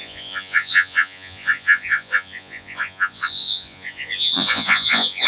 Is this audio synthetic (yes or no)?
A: yes